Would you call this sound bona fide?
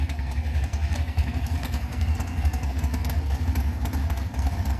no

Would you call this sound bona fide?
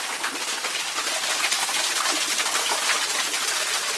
yes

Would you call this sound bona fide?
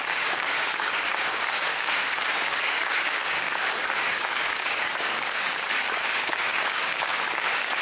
no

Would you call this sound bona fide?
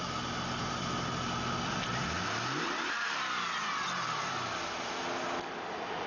yes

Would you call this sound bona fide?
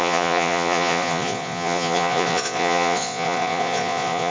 no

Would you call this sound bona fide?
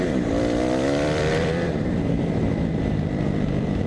no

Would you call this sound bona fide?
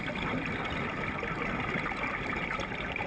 no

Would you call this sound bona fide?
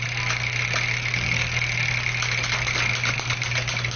yes